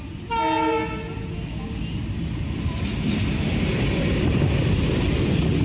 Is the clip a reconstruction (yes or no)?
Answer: no